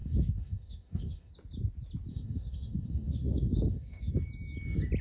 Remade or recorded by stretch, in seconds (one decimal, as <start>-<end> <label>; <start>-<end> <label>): 0.0-1.3 remade; 1.3-2.1 recorded; 2.1-4.1 remade; 4.1-5.0 recorded